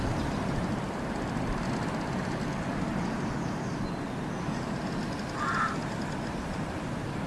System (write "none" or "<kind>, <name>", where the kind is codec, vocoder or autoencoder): none